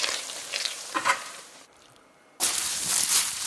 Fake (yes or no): yes